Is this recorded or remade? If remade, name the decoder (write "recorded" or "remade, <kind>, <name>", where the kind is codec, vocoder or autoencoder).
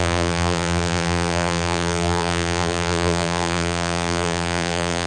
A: remade, vocoder, BigVGAN v2